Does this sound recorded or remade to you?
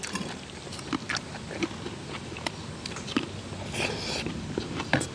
recorded